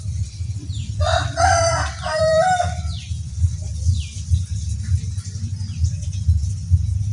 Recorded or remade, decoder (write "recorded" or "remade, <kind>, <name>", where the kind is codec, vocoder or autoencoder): remade, vocoder, BigVGAN v2